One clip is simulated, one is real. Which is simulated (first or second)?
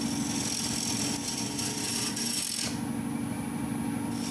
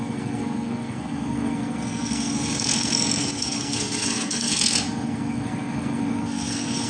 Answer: second